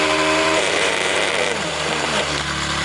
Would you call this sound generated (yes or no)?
yes